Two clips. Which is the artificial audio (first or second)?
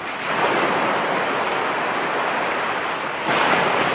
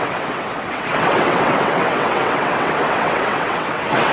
second